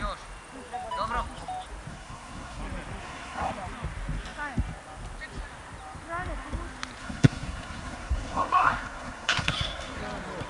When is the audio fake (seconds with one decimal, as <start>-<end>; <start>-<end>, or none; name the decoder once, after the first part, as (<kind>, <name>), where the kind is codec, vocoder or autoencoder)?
1.9-2.6 (codec, SNAC); 3.0-3.5; 7.0-10.0